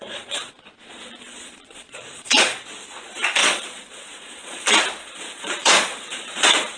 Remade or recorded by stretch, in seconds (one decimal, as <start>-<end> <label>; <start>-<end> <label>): 0.0-2.6 remade; 2.6-3.4 recorded; 3.4-4.6 remade; 4.6-5.0 recorded; 5.0-6.8 remade